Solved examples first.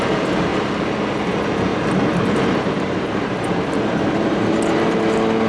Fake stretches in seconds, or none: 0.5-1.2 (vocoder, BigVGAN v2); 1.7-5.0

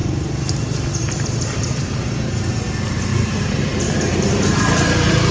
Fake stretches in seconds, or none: 0.0-2.1 (vocoder, BigVGAN v2); 3.1-4.6

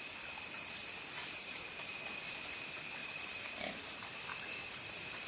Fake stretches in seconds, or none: 1.2-2.2 (vocoder, BigVGAN v2); 3.0-3.6; 4.3-5.3

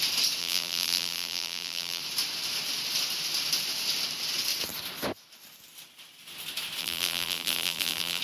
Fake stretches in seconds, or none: 0.4-2.0 (vocoder, BigVGAN v2); 6.8-8.2

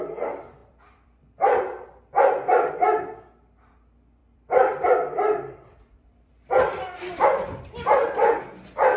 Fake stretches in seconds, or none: 0.6-2.7 (vocoder, BigVGAN v2); 4.2-8.4

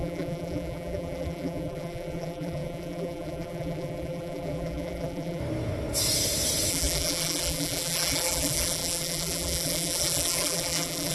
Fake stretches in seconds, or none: 0.0-5.4 (vocoder, BigVGAN v2); 6.7-11.1

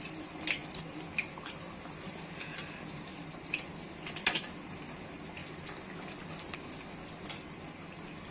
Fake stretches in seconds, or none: 3.1-3.6 (vocoder, BigVGAN v2)

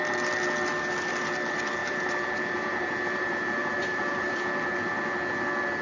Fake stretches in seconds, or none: 1.8-4.4 (vocoder, BigVGAN v2)